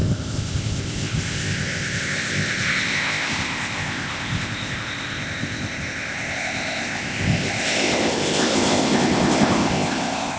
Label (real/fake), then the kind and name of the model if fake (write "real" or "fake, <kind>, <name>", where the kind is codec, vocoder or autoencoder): fake, codec, ZipCodec